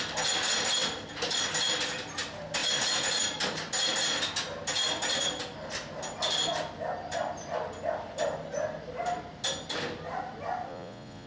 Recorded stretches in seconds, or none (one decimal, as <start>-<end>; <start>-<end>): 0.0-10.7